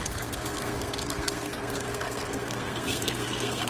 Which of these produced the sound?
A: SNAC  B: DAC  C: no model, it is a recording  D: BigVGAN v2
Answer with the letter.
A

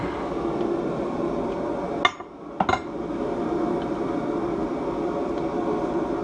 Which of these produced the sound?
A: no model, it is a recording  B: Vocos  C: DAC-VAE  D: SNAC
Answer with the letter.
A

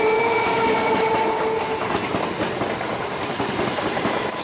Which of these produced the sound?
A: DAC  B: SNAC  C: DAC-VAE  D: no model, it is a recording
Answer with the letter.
D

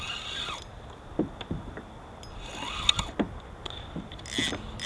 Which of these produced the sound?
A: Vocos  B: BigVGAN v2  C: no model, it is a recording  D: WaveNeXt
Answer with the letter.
C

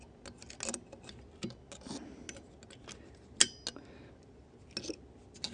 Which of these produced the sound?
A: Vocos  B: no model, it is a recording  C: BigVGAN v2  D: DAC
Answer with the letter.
B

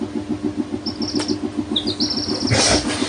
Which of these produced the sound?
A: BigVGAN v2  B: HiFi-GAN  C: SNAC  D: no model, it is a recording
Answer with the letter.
D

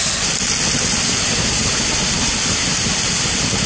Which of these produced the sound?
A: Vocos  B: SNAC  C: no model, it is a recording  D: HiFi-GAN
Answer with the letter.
C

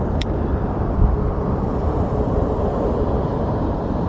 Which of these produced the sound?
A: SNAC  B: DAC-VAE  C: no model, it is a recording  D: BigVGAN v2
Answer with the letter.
D